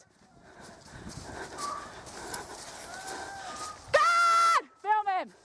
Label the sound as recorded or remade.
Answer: recorded